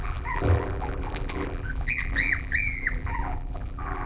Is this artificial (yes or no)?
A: yes